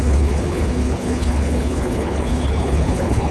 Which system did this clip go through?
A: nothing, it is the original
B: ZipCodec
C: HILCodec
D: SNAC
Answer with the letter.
C